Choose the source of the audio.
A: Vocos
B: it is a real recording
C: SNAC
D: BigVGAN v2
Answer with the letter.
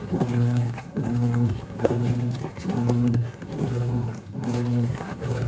C